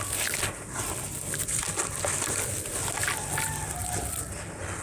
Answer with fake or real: real